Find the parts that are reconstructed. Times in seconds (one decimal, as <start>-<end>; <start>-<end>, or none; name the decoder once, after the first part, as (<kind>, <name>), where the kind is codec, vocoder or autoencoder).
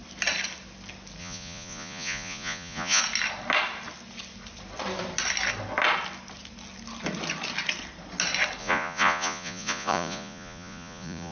1.2-3.0 (vocoder, Vocos); 8.6-11.3